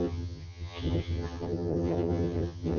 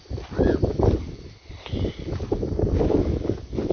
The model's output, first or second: first